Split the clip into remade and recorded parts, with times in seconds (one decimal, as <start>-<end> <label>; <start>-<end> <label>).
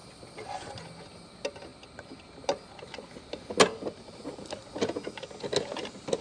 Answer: 0.0-6.2 recorded